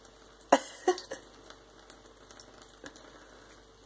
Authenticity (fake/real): real